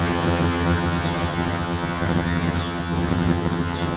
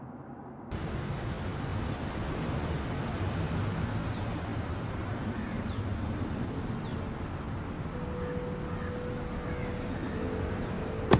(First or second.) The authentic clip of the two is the second